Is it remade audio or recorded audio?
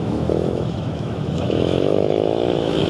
remade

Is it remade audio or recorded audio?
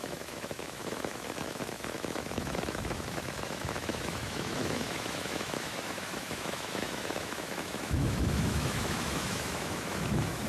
remade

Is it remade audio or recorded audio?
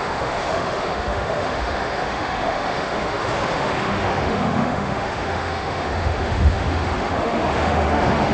remade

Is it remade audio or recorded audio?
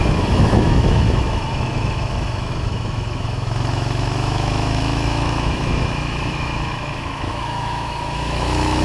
remade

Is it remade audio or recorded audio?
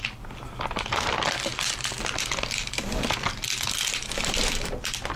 recorded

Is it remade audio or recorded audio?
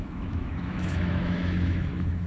remade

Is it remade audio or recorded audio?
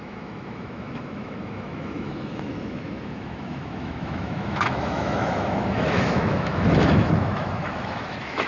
remade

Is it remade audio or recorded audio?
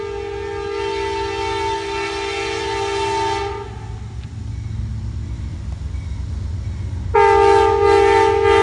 recorded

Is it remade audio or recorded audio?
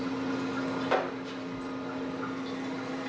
recorded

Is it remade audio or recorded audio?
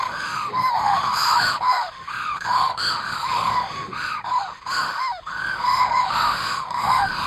remade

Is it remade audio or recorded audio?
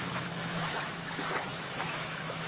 remade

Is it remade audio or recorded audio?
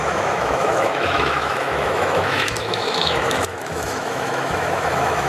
remade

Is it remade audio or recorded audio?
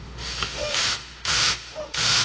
remade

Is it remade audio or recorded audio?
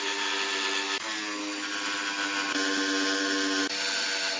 recorded